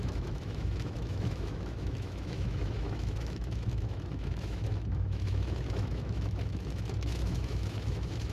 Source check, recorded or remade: remade